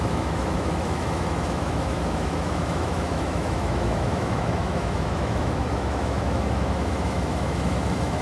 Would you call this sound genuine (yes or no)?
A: no